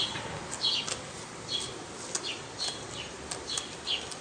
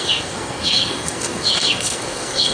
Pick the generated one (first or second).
second